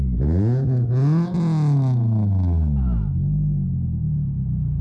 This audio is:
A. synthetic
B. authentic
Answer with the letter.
B